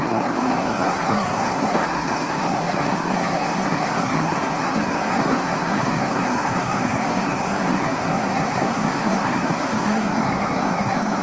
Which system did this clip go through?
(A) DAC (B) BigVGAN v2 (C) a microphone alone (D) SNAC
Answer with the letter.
D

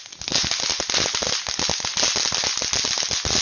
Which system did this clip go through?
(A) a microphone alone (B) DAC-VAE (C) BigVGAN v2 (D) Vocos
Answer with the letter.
A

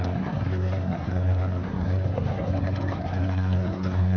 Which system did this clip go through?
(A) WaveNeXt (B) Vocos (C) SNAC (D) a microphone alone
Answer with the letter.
C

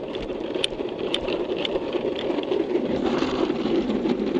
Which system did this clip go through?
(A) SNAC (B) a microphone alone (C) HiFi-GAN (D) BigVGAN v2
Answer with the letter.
D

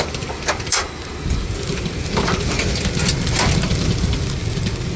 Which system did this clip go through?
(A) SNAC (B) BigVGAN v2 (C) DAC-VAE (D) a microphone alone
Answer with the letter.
D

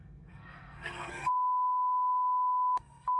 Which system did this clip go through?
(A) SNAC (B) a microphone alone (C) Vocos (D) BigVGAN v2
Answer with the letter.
A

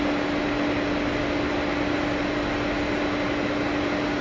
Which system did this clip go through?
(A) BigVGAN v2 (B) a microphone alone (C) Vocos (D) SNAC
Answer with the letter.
B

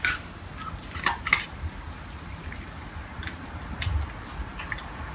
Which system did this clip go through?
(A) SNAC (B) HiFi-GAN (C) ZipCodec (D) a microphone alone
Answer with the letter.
D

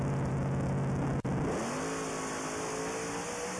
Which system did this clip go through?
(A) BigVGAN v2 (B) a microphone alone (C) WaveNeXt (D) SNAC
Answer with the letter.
B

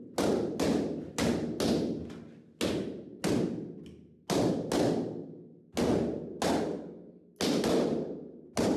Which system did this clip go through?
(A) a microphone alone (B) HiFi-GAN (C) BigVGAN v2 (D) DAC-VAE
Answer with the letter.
A